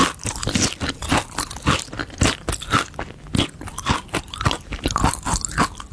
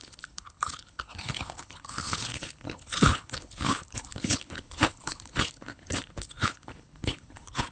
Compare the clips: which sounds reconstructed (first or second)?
second